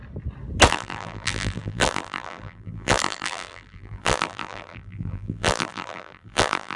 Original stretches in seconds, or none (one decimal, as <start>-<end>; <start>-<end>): 0.0-0.7